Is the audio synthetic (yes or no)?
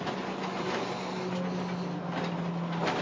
no